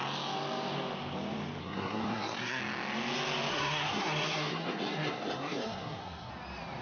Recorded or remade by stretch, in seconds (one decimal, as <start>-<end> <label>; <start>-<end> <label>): 0.0-1.6 recorded; 1.6-2.6 remade; 2.6-3.5 recorded; 3.5-6.3 remade; 6.3-6.8 recorded